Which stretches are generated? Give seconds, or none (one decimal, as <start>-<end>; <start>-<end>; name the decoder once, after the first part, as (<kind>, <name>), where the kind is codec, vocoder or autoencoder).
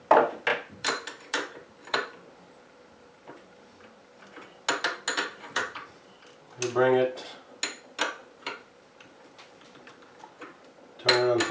0.5-4.2 (vocoder, BigVGAN v2); 5.1-6.2; 8.2-10.2